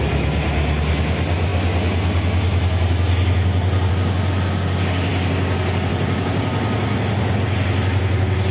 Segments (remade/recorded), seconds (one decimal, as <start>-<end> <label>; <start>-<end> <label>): 0.0-8.5 recorded